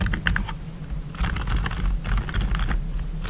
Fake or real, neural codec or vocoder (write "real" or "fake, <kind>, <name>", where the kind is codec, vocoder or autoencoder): real